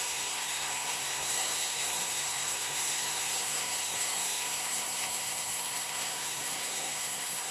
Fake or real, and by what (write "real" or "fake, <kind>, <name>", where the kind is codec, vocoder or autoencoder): fake, codec, SNAC